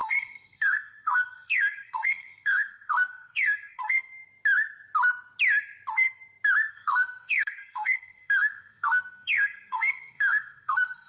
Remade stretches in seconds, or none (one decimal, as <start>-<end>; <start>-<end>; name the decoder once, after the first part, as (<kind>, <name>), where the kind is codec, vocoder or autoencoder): 0.0-4.1 (codec, SNAC); 6.7-11.1